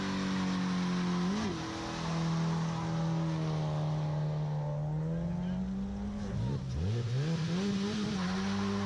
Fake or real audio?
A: real